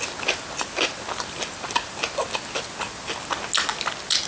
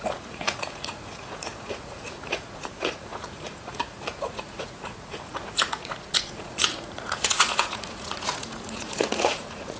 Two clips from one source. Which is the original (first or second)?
first